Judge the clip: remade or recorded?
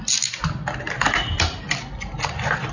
recorded